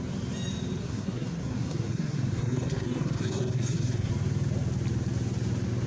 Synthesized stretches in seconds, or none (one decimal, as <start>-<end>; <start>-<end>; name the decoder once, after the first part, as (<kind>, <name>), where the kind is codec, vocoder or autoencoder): 0.8-4.1 (codec, SNAC)